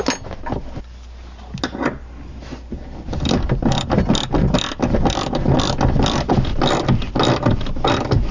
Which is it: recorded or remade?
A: recorded